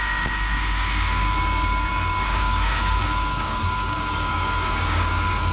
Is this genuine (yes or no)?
no